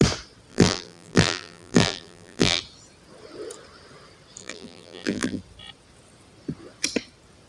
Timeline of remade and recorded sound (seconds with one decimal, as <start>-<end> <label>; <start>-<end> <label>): 0.0-0.5 recorded; 0.5-2.6 remade; 2.6-4.4 recorded; 4.4-5.4 remade; 5.4-7.5 recorded